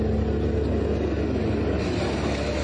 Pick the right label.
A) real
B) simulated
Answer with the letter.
A